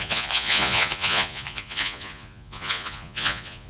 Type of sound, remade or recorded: remade